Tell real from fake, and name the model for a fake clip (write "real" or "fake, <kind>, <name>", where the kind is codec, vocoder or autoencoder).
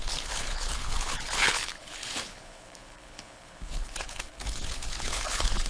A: fake, codec, HILCodec